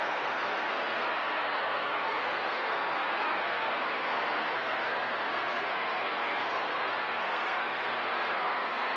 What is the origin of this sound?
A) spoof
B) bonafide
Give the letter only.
A